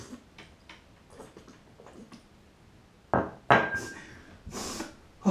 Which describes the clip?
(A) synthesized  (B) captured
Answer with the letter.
B